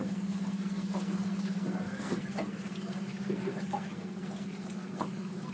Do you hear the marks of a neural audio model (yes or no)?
yes